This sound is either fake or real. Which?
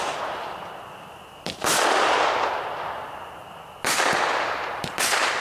real